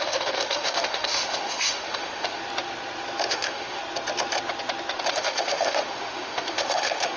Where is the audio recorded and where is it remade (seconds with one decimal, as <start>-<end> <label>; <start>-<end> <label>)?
0.0-2.4 remade; 2.4-3.3 recorded; 3.3-3.8 remade; 3.8-5.1 recorded; 5.1-7.2 remade